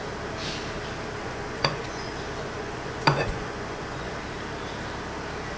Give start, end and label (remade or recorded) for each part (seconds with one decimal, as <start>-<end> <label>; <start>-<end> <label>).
0.0-1.2 recorded; 1.2-4.1 remade; 4.1-5.6 recorded